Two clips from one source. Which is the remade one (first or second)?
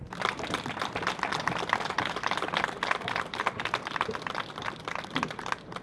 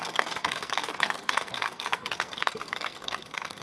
second